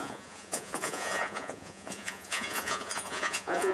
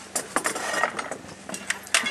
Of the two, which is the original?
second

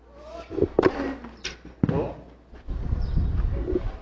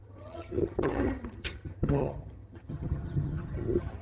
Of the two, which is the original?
first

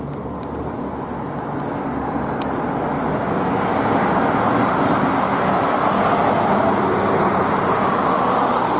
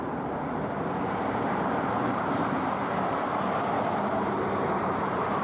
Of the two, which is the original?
first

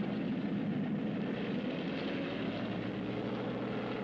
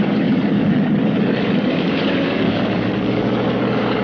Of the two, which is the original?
first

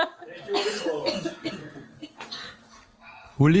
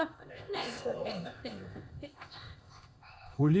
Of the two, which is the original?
first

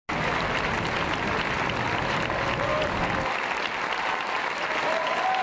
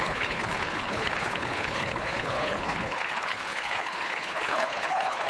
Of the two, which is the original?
first